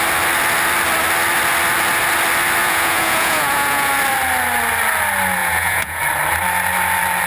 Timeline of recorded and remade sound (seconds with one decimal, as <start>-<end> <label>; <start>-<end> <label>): 0.0-2.6 recorded; 2.6-3.9 remade; 3.9-5.4 recorded; 5.4-6.0 remade; 6.0-7.3 recorded